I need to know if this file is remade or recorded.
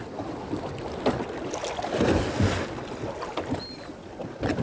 recorded